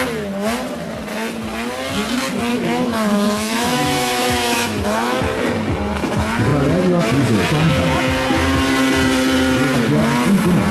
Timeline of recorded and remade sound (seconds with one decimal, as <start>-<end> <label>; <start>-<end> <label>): 0.0-2.5 recorded; 2.5-5.2 remade; 5.2-10.7 recorded